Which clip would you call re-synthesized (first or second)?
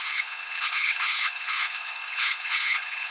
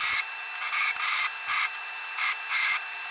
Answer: first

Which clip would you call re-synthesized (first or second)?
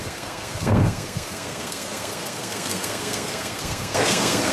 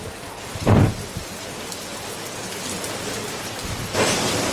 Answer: first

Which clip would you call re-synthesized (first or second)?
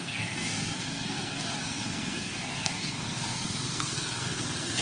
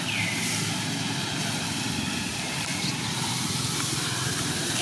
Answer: first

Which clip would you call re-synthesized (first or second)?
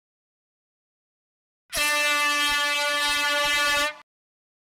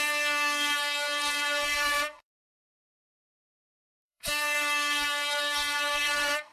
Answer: second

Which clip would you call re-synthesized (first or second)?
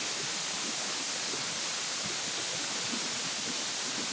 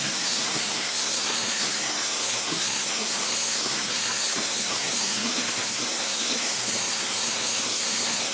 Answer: second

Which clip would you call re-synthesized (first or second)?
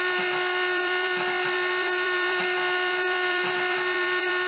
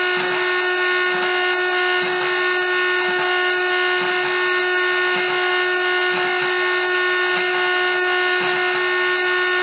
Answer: first